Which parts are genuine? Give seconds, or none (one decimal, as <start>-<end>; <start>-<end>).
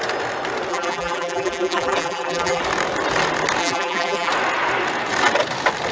0.0-0.7; 2.6-3.6; 4.3-5.9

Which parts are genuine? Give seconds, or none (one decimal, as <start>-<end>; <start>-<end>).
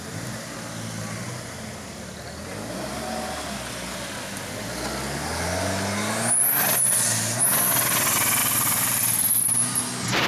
0.0-8.4; 9.0-10.3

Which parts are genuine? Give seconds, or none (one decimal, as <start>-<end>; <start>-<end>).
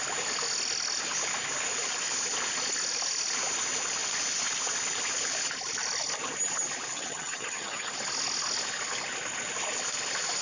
0.0-6.9; 7.9-10.4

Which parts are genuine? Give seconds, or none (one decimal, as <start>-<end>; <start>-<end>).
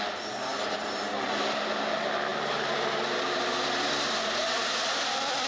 0.0-0.5; 1.6-5.5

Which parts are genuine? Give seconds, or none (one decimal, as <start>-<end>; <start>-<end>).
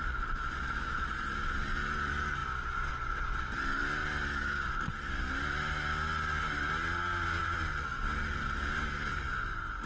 0.0-7.4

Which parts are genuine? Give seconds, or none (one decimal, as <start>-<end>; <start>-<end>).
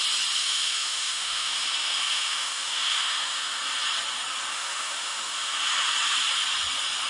0.0-0.4; 3.6-4.5; 5.7-7.1